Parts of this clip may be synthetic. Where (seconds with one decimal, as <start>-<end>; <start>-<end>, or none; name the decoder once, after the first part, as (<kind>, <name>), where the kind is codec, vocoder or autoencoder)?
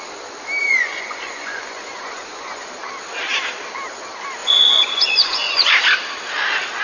0.6-2.7 (vocoder, Vocos); 4.4-5.7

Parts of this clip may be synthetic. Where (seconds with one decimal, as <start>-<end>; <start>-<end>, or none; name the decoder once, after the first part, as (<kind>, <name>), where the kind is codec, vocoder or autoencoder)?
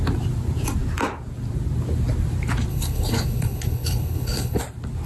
2.7-4.6 (codec, HILCodec)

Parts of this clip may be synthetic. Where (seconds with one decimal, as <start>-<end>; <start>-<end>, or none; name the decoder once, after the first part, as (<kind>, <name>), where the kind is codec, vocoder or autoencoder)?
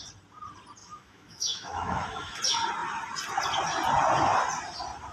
0.8-2.4 (autoencoder, DAC-VAE)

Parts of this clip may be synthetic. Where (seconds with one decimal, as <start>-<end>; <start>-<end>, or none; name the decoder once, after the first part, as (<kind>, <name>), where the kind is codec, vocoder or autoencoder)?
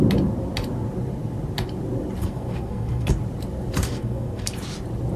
2.2-3.1 (codec, SNAC); 3.8-4.5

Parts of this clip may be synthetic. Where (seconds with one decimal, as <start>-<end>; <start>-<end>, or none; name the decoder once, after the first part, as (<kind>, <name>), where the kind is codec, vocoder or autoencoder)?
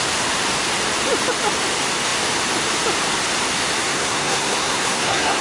3.8-5.4 (codec, SNAC)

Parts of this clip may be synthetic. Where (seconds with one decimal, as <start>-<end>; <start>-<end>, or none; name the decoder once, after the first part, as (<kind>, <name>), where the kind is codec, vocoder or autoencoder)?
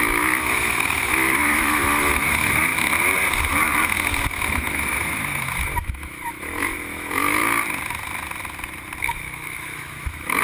0.0-2.7 (autoencoder, DAC-VAE); 4.3-7.4; 9.0-10.4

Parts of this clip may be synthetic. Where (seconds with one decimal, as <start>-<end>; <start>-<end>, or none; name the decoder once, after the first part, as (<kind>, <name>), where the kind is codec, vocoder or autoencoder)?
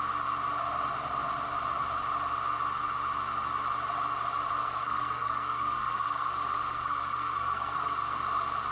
4.6-8.2 (codec, SNAC)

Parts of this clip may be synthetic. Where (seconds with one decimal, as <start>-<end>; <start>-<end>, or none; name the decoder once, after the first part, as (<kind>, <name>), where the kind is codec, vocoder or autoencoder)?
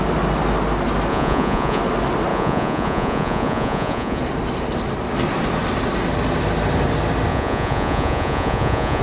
1.1-1.8 (vocoder, Vocos); 2.3-4.2; 7.3-9.0